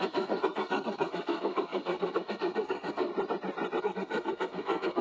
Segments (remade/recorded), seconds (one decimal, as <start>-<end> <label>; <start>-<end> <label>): 0.0-3.1 remade; 3.1-3.8 recorded; 3.8-5.0 remade